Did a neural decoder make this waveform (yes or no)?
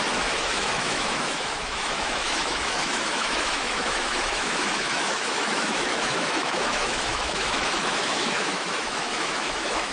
yes